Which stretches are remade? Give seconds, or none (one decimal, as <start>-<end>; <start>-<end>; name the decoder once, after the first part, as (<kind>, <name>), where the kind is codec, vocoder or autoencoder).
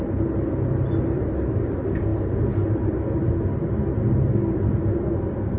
0.0-2.1 (vocoder, BigVGAN v2); 2.7-3.5; 4.5-5.6